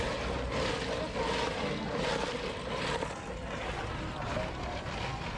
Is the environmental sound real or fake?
real